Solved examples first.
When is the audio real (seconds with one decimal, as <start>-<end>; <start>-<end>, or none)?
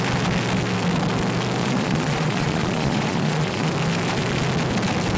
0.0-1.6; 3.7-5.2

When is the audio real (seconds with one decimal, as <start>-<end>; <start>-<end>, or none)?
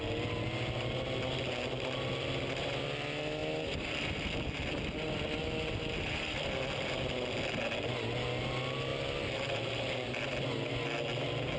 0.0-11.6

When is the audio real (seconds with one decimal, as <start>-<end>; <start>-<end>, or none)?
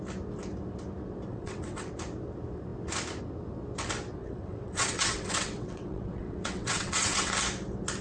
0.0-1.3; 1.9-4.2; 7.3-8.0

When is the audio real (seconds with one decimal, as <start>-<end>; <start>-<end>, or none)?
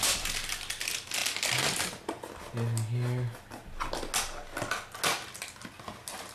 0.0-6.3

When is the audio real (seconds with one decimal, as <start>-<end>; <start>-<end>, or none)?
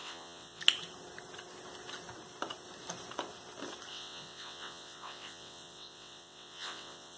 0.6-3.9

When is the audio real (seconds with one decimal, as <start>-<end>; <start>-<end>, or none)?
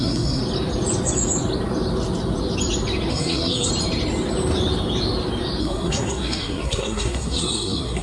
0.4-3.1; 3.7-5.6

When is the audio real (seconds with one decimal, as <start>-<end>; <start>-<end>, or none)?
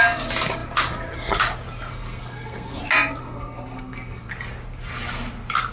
0.0-1.9; 2.8-3.2; 4.3-5.7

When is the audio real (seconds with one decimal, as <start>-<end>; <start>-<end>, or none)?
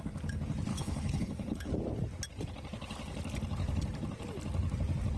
0.0-0.7; 1.7-5.2